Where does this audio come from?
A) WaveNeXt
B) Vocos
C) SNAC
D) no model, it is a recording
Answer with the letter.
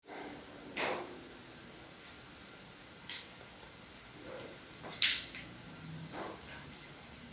D